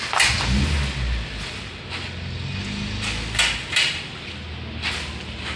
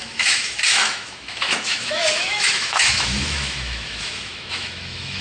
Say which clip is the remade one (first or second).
second